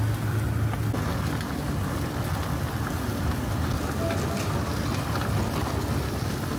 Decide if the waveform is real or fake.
real